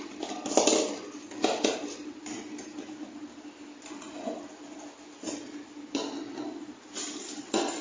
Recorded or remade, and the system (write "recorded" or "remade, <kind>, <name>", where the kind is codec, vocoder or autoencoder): recorded